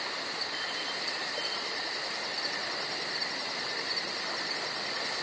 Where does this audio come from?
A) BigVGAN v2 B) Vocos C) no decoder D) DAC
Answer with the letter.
C